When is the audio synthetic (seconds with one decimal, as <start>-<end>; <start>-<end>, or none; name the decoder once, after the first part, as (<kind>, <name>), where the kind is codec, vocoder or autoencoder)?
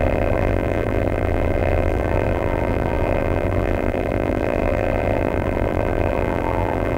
0.0-7.0 (vocoder, BigVGAN v2)